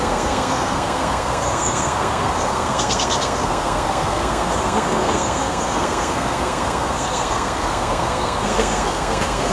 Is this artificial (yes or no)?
yes